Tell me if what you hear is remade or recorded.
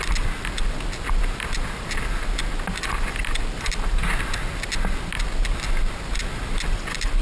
recorded